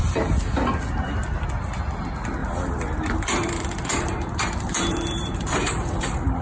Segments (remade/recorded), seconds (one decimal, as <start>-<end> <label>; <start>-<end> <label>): 0.0-2.4 recorded; 2.4-6.4 remade